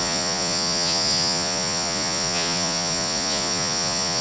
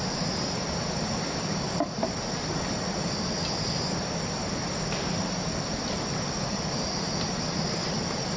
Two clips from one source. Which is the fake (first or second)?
first